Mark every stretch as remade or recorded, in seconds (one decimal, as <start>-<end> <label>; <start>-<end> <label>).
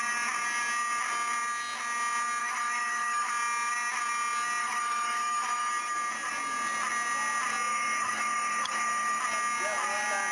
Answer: 0.0-2.4 recorded; 2.4-3.3 remade; 3.3-4.6 recorded; 4.6-5.7 remade; 5.7-7.7 recorded; 7.7-9.2 remade; 9.2-10.3 recorded